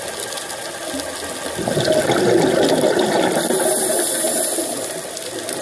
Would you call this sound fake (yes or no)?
no